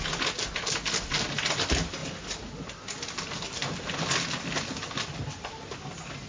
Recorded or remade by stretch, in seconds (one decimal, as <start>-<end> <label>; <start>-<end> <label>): 0.0-6.3 recorded